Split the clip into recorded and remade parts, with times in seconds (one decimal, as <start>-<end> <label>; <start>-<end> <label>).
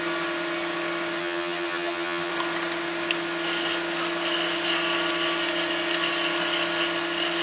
0.0-1.2 recorded; 1.2-2.3 remade; 2.3-7.4 recorded